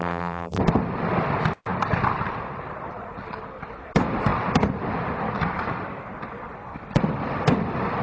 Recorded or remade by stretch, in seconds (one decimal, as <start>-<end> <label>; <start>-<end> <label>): 0.0-0.6 remade; 0.6-8.0 recorded